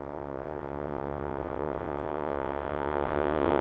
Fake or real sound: fake